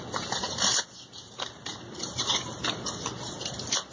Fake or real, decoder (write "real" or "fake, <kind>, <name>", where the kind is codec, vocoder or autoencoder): real